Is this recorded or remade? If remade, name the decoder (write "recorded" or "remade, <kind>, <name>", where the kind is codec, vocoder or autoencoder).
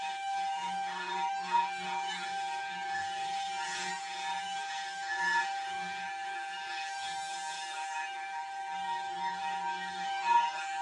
remade, codec, DAC